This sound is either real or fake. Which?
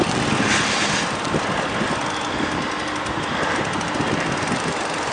real